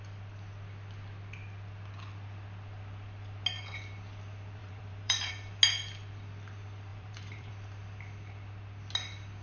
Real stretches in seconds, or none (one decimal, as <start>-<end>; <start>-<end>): 0.0-4.6; 5.3-6.9; 7.5-9.4